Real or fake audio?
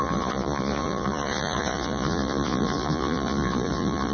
fake